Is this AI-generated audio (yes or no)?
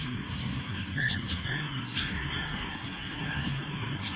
yes